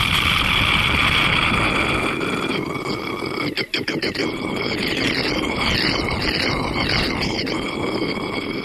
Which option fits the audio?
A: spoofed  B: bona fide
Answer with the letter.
B